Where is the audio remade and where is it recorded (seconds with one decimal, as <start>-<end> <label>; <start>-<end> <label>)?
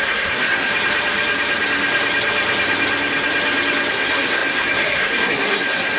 0.0-0.7 remade; 0.7-3.9 recorded; 3.9-6.0 remade